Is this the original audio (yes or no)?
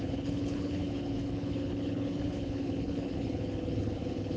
no